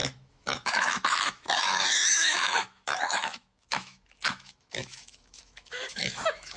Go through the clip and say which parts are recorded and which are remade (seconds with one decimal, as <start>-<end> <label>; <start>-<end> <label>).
0.0-6.6 remade